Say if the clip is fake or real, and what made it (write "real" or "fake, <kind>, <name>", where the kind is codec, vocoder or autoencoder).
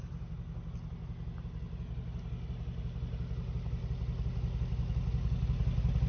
real